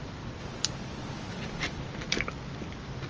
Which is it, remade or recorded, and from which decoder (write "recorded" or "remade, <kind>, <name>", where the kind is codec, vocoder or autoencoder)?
recorded